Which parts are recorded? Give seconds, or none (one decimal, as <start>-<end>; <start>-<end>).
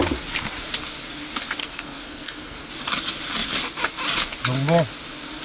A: 0.0-1.6; 2.7-5.4